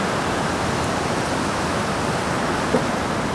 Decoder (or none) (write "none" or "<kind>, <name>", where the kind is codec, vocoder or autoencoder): none